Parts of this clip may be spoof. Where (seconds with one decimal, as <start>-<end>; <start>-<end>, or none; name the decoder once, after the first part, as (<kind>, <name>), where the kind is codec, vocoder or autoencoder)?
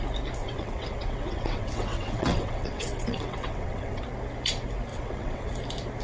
0.4-4.0 (vocoder, WaveNeXt); 4.9-5.5